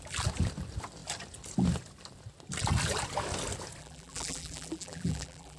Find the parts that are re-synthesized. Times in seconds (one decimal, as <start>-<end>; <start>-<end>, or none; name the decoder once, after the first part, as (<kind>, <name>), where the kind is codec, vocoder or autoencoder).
3.8-5.6 (vocoder, BigVGAN v2)